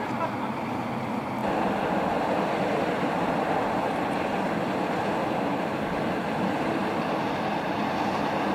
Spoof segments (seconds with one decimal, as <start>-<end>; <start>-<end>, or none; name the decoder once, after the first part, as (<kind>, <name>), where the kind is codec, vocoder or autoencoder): none